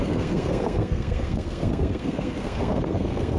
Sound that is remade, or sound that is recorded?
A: remade